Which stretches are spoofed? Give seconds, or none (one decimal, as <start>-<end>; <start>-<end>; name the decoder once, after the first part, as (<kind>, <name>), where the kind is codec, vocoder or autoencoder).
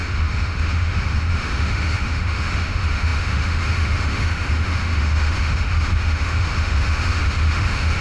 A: 0.0-8.0 (autoencoder, DAC-VAE)